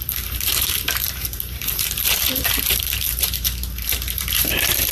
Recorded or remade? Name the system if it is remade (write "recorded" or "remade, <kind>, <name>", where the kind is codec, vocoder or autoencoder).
remade, vocoder, BigVGAN v2